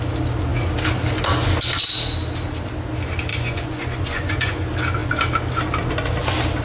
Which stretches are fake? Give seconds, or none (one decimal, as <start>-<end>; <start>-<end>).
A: 3.3-4.5